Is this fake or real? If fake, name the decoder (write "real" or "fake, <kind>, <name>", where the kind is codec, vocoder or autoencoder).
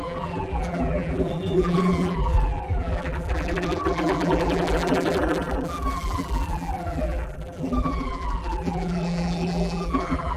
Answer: fake, vocoder, BigVGAN v2